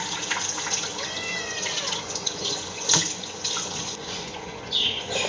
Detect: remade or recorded remade